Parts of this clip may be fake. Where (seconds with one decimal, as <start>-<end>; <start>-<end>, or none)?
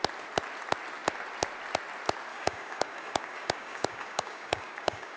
2.3-5.2